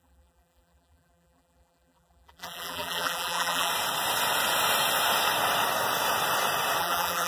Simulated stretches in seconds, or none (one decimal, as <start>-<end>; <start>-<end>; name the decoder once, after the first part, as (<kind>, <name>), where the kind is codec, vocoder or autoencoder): 0.0-3.7 (vocoder, BigVGAN v2); 6.8-7.3